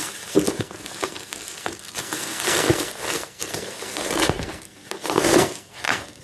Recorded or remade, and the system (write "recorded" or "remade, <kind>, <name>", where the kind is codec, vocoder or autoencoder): remade, codec, SNAC